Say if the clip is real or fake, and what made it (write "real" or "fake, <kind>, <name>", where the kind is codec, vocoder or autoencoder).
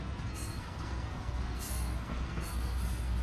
fake, codec, SNAC